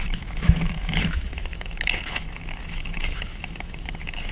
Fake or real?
fake